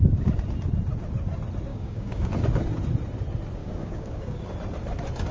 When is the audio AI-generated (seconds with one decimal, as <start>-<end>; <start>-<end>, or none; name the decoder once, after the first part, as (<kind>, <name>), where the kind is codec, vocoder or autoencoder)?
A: 1.7-2.3 (codec, DAC); 3.6-4.4